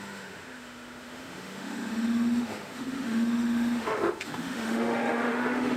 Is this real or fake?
fake